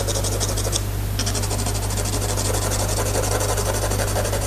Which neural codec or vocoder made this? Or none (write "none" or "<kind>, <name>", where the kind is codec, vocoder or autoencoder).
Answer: none